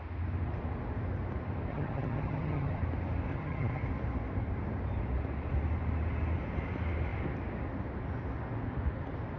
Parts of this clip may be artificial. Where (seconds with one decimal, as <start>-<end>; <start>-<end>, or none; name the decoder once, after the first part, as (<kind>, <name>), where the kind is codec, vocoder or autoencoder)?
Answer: 1.7-2.8 (vocoder, HiFi-GAN); 3.3-3.8

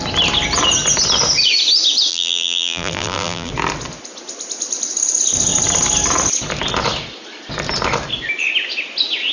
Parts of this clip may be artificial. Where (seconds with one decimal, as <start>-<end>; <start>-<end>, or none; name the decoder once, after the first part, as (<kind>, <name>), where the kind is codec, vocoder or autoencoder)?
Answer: 2.1-3.5 (vocoder, BigVGAN v2)

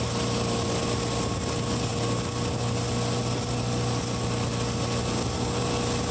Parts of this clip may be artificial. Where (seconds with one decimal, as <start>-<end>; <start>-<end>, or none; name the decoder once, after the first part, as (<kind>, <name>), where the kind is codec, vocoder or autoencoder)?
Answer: none

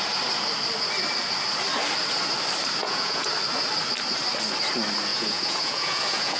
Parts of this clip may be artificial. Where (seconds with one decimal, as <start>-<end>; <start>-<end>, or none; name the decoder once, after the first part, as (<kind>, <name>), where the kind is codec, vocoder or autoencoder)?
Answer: 2.8-3.3 (vocoder, Vocos); 5.1-6.4

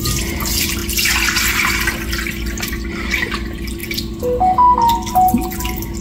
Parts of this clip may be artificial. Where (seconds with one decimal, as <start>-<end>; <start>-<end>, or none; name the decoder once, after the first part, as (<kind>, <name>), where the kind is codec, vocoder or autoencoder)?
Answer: none

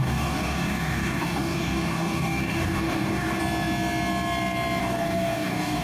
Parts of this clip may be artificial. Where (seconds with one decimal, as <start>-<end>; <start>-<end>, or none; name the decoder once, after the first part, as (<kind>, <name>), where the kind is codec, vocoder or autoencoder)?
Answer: 0.0-3.4 (codec, DAC); 4.8-5.8

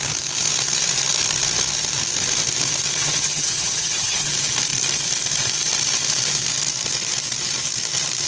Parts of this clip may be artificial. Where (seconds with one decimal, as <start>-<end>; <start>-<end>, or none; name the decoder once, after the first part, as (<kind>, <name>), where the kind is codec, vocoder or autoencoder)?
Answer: 3.0-4.3 (vocoder, HiFi-GAN)

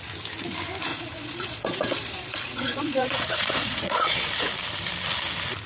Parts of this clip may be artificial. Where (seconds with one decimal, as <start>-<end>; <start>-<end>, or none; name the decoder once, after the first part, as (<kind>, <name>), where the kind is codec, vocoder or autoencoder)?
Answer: 0.9-4.3 (vocoder, Vocos)